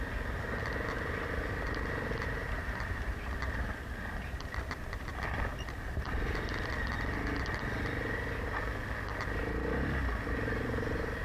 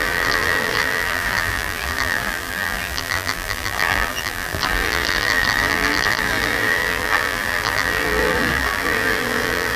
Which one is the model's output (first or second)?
second